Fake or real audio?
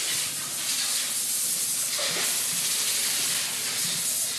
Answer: real